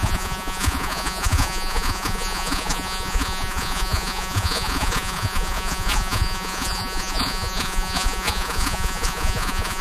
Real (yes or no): no